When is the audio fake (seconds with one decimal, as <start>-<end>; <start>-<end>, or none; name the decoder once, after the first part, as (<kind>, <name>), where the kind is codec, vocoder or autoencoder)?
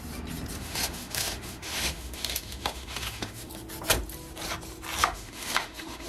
0.6-3.5 (autoencoder, DAC-VAE); 5.0-6.1